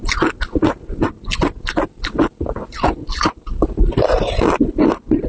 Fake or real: real